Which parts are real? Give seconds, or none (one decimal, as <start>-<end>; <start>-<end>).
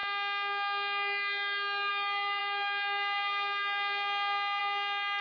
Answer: 0.0-5.2